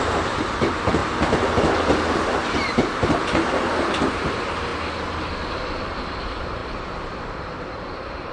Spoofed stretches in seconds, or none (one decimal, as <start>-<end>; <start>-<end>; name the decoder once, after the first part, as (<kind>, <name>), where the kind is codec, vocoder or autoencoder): 0.0-1.0 (vocoder, BigVGAN v2); 2.4-4.7; 5.5-8.3

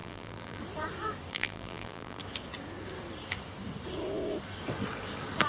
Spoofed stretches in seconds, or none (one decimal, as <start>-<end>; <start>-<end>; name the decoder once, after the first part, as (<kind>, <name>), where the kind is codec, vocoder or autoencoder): 0.0-0.6 (vocoder, BigVGAN v2); 1.3-2.2

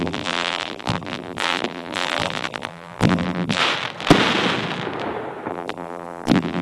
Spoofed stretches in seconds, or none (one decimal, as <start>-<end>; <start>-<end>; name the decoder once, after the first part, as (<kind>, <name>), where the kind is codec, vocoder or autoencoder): 0.0-3.6 (vocoder, BigVGAN v2); 5.5-6.6

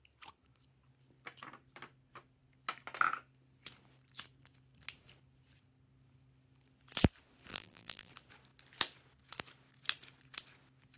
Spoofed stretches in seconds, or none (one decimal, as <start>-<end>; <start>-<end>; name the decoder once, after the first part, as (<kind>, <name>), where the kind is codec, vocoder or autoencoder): 7.5-8.1 (vocoder, BigVGAN v2)